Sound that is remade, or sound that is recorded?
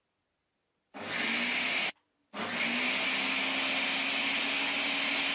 recorded